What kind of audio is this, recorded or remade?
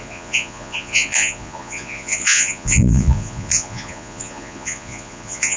remade